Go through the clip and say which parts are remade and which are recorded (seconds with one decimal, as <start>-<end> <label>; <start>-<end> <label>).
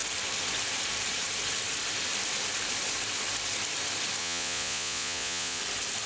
0.0-4.2 recorded; 4.2-5.6 remade; 5.6-6.1 recorded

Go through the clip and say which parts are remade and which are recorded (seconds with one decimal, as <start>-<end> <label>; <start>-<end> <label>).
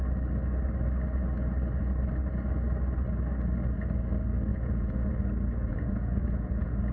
0.0-4.5 recorded; 4.5-5.1 remade; 5.1-5.7 recorded; 5.7-6.9 remade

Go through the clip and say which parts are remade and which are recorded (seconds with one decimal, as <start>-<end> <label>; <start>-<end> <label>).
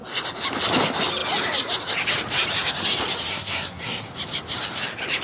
0.0-3.3 recorded; 3.3-4.1 remade; 4.1-5.2 recorded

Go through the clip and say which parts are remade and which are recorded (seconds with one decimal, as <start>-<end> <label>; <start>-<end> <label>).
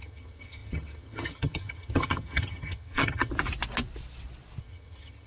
0.0-3.3 remade; 3.3-4.6 recorded; 4.6-5.3 remade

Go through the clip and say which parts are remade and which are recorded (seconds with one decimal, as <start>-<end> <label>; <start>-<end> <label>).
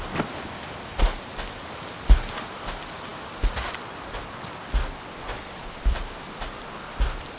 0.0-7.4 recorded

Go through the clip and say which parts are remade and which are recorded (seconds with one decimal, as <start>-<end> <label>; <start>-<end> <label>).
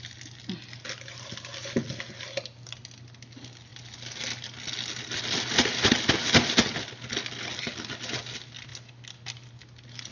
0.0-10.1 recorded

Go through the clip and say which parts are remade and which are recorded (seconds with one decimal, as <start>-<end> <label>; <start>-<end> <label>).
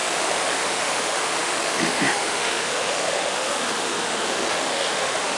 0.0-5.4 remade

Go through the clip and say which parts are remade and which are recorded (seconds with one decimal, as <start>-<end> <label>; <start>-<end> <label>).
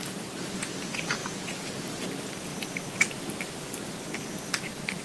0.0-1.2 recorded; 1.2-1.7 remade; 1.7-5.0 recorded